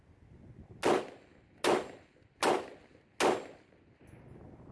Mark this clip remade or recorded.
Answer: recorded